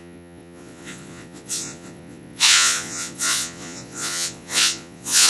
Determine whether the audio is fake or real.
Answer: fake